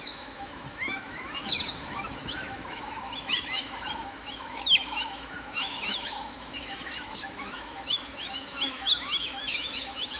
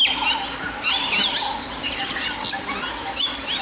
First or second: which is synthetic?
first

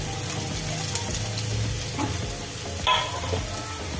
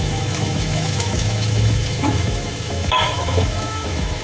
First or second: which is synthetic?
second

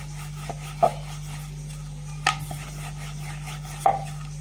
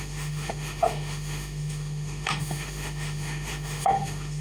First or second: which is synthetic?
second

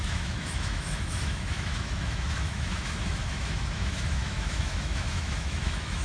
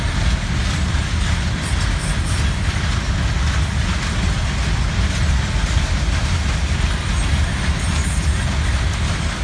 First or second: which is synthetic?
first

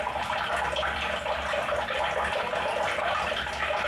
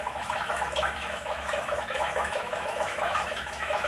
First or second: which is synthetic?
second